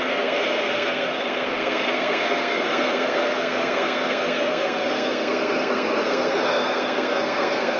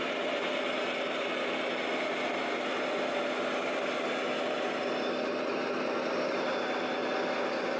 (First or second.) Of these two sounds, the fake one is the first